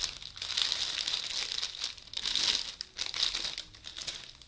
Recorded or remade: recorded